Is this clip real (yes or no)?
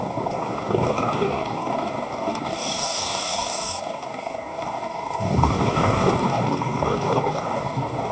no